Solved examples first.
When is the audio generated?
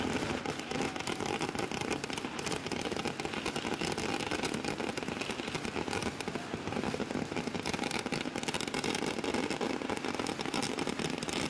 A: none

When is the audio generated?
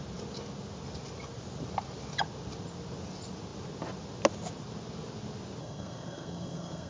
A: 5.6-6.9 (codec, SNAC)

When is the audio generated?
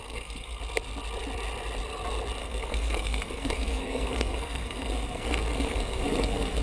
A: 0.0-0.6 (codec, SNAC); 2.4-6.6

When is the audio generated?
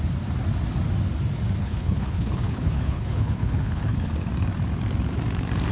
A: 1.6-4.1 (codec, HILCodec)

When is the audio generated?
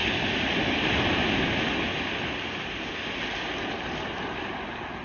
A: none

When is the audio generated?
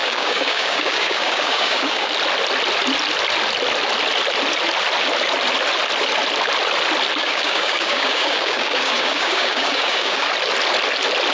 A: 0.0-2.1 (codec, DAC); 7.2-10.3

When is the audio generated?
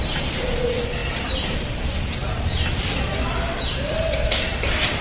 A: 0.0-5.0 (vocoder, BigVGAN v2)